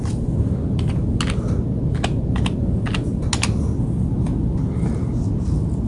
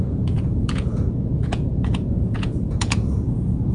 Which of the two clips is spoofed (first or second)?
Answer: second